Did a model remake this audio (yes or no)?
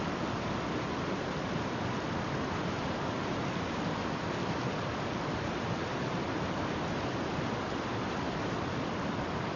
no